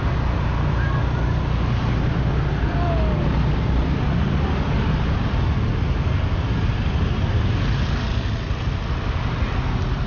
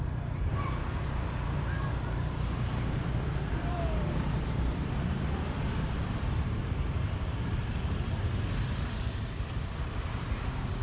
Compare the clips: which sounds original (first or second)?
first